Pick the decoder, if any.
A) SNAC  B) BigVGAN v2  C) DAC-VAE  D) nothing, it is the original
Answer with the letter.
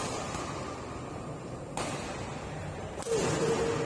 D